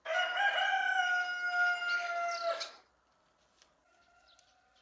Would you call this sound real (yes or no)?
yes